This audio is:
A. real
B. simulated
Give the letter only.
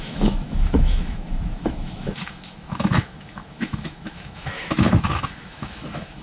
B